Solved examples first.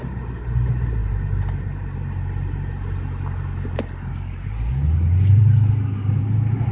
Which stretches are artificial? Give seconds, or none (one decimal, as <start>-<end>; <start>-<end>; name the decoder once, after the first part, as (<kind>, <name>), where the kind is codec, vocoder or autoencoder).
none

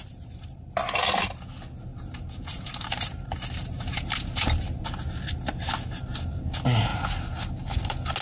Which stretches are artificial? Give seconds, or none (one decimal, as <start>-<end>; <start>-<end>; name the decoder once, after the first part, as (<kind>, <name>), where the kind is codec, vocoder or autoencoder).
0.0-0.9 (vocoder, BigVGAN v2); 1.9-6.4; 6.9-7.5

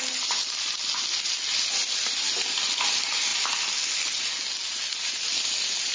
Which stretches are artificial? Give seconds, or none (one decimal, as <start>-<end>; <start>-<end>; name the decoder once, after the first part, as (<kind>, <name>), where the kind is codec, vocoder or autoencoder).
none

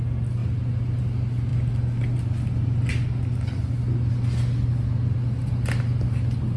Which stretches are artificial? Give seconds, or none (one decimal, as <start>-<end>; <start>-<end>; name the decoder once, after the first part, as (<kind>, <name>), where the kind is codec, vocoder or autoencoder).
none

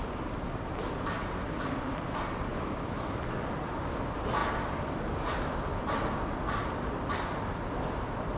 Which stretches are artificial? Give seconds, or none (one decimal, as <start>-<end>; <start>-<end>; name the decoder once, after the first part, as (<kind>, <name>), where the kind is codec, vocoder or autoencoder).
none

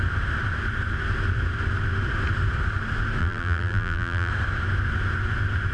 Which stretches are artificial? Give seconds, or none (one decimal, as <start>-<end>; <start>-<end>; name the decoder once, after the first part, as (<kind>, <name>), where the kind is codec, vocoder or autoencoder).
3.2-4.3 (vocoder, BigVGAN v2)

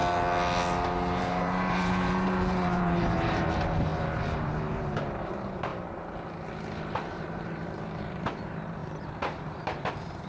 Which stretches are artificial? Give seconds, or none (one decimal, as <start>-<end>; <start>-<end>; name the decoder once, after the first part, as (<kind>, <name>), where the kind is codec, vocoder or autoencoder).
1.2-5.7 (vocoder, BigVGAN v2); 6.5-10.3